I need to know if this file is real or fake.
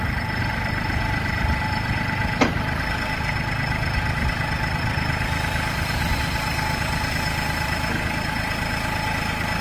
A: fake